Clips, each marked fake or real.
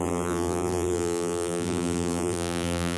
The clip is fake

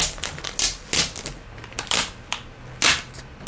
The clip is real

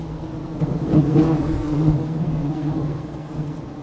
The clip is fake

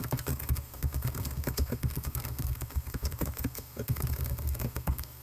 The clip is fake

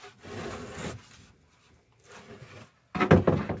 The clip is real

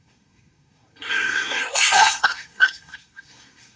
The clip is fake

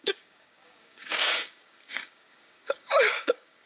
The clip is fake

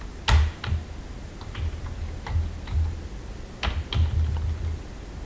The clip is real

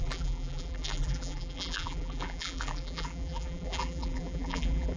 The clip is fake